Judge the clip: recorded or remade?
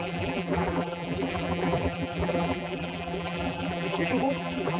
remade